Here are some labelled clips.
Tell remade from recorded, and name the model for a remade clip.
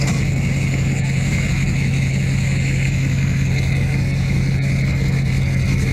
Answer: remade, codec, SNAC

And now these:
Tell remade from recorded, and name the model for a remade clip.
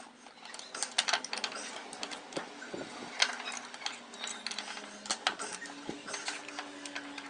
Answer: recorded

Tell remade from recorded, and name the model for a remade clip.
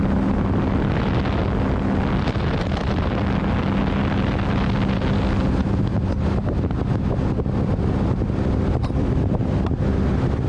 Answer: recorded